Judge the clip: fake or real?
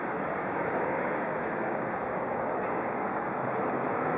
fake